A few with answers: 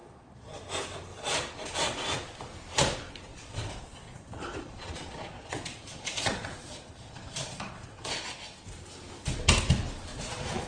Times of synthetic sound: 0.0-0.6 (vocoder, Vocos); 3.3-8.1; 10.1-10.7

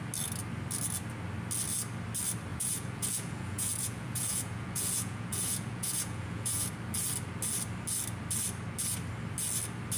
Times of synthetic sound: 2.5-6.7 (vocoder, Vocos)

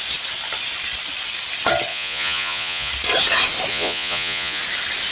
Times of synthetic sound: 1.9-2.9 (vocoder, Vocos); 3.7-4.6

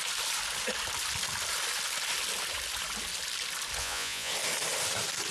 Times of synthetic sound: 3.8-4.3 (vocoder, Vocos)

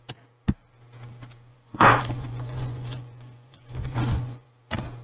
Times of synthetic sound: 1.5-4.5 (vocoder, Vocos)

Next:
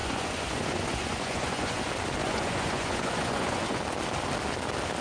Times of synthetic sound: 0.0-1.8 (vocoder, Vocos); 2.2-3.8